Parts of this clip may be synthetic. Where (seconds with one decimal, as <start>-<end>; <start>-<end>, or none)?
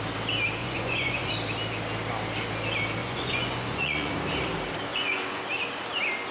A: 0.6-1.3; 3.0-4.1; 4.9-5.4